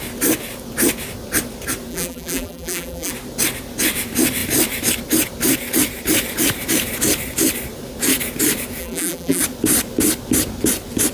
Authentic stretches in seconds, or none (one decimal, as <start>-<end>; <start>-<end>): 0.0-1.9; 3.1-8.8; 9.4-11.1